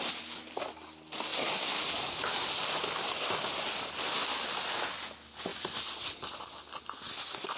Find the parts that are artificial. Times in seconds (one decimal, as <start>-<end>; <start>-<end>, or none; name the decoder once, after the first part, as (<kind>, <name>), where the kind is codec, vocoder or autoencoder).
none